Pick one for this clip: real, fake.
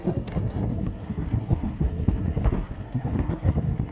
fake